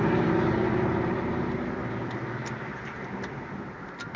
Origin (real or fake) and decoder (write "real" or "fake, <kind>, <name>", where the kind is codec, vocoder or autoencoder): real